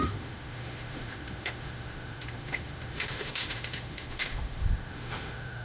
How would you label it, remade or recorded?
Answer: remade